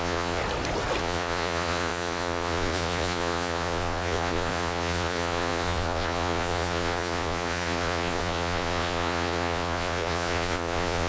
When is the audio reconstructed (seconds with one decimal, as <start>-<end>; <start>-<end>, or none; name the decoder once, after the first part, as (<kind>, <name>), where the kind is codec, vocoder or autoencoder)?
0.0-0.4 (vocoder, Vocos); 1.0-11.1